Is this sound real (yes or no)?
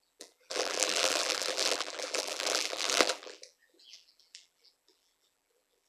no